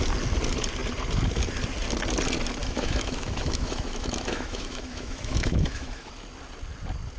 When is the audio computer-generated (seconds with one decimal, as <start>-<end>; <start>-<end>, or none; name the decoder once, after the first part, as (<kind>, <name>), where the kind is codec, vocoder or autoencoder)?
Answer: 2.6-6.1 (autoencoder, DAC-VAE)